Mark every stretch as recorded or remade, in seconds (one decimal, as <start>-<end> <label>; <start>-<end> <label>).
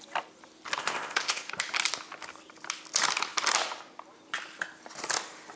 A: 0.0-0.8 recorded; 0.8-1.5 remade; 1.5-5.6 recorded